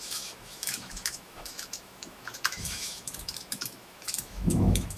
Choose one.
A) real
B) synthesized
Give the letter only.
B